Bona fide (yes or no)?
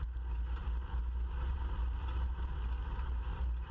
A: yes